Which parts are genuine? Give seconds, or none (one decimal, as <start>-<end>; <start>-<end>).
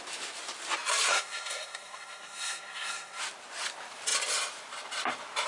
0.0-1.1; 3.2-5.5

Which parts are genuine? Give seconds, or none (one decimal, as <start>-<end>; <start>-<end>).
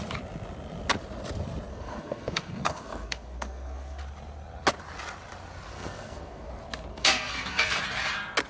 0.0-1.7; 4.0-5.7; 6.5-6.9; 7.8-8.5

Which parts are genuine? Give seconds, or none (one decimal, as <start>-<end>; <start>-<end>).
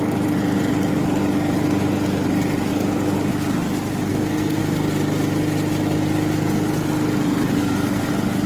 0.0-4.1; 4.6-7.6; 8.1-8.5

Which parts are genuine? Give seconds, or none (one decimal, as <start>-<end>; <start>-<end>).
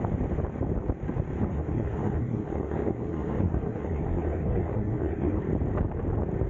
0.0-1.5; 5.4-6.5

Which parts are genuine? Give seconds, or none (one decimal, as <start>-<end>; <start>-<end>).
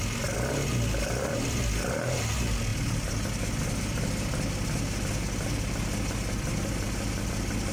0.0-7.7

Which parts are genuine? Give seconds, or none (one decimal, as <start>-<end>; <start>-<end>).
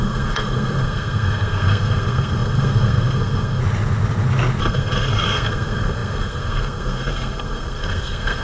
3.6-4.6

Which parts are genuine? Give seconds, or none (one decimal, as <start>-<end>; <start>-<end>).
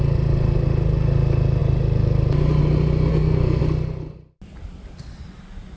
0.0-3.1; 3.6-5.8